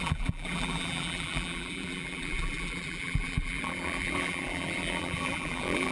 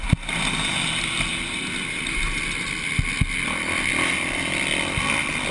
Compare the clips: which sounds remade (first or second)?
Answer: first